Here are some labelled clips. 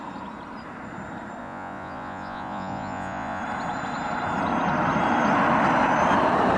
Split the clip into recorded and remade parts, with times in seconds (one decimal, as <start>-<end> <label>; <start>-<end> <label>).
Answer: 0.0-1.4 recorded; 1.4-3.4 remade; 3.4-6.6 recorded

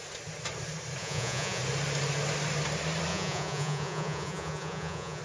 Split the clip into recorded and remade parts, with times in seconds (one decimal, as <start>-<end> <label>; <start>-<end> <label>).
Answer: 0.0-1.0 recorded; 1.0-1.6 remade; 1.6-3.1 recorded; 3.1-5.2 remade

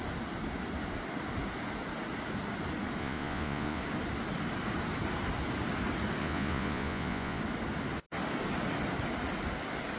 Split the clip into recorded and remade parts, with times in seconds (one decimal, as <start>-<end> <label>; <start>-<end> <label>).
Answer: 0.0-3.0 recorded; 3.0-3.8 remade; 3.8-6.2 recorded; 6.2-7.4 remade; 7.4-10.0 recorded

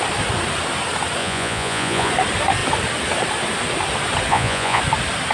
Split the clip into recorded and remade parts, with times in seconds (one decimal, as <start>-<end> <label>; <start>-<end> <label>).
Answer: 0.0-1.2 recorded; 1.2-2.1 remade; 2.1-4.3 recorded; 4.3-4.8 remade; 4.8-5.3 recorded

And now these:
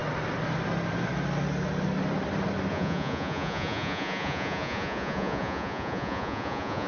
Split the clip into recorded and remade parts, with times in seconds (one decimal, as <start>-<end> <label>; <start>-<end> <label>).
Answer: 0.0-2.7 recorded; 2.7-6.9 remade

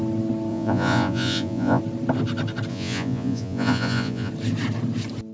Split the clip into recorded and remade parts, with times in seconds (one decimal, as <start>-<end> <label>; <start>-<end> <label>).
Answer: 0.0-0.5 recorded; 0.5-1.8 remade; 1.8-2.7 recorded; 2.7-4.3 remade; 4.3-5.3 recorded

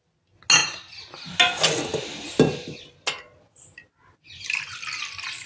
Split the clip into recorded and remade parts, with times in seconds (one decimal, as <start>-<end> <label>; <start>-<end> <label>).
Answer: 0.0-5.5 recorded

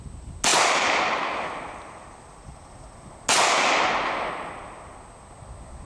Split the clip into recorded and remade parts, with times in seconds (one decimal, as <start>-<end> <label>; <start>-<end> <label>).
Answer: 0.0-5.8 recorded